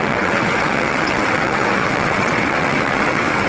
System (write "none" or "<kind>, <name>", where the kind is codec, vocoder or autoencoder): vocoder, WaveNeXt